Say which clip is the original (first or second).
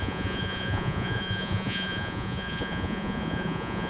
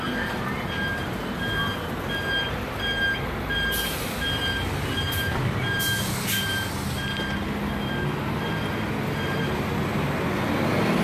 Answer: second